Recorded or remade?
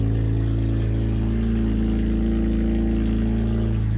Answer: recorded